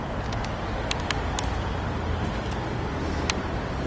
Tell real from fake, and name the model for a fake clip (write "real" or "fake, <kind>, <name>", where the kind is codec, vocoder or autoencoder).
real